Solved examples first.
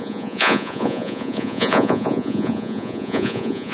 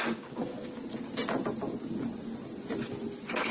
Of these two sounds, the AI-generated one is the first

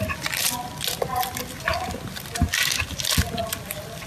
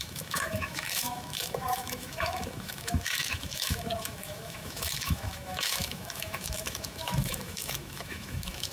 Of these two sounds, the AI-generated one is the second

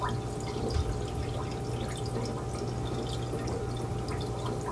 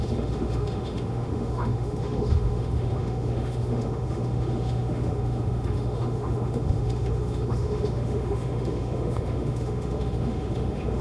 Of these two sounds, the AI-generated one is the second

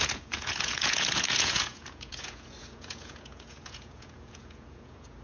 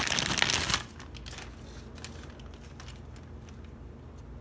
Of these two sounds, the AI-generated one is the first